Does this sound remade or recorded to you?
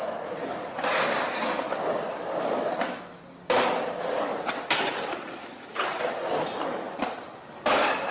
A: recorded